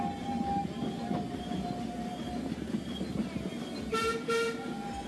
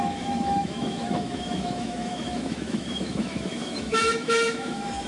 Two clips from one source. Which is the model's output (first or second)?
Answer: second